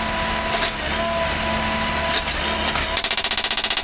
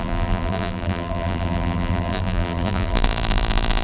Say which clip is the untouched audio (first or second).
first